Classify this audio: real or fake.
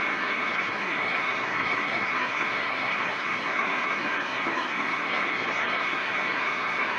fake